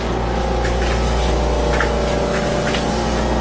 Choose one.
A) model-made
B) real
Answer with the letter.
B